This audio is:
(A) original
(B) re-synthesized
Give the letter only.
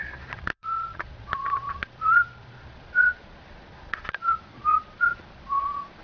B